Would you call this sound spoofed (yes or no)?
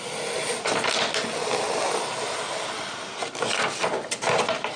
no